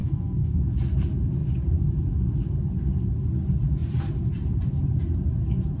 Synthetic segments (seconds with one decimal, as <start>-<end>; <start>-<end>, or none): 0.0-0.6